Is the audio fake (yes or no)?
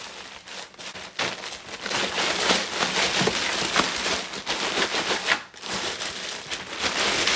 no